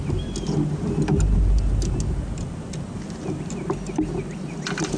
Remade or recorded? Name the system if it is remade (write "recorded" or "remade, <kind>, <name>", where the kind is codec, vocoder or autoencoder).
recorded